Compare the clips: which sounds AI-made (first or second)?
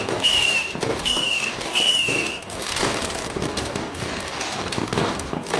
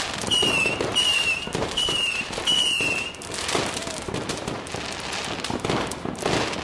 first